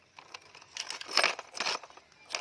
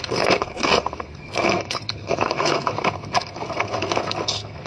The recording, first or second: first